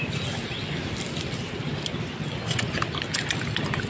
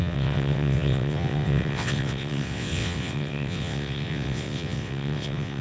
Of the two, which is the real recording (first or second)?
first